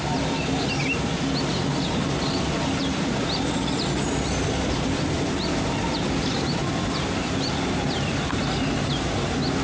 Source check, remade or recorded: recorded